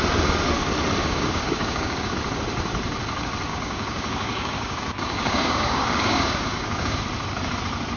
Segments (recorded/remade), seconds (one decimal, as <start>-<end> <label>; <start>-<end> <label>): 0.0-1.0 recorded; 1.0-2.1 remade; 2.1-3.5 recorded; 3.5-7.0 remade; 7.0-8.0 recorded